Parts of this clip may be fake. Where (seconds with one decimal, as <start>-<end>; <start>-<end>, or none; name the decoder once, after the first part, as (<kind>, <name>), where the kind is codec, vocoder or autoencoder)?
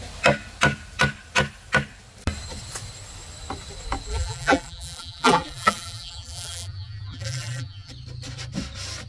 4.1-7.9 (vocoder, BigVGAN v2)